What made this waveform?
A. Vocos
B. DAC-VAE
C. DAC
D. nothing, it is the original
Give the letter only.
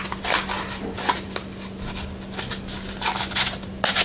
D